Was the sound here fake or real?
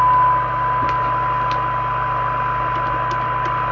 real